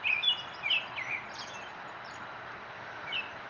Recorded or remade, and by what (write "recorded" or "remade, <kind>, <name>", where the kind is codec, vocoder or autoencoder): recorded